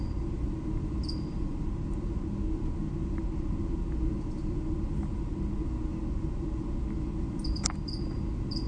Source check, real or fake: real